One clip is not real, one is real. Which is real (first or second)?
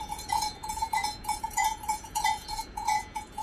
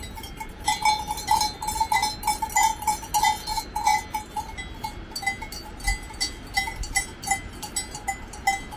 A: second